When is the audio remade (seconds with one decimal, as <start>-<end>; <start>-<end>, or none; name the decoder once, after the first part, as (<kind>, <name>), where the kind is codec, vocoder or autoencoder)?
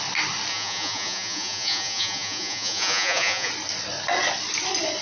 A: 0.5-3.5 (vocoder, Vocos)